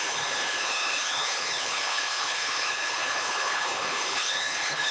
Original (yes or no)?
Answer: no